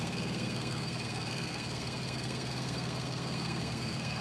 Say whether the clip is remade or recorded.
remade